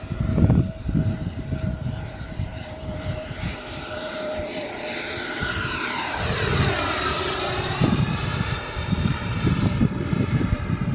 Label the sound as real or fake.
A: fake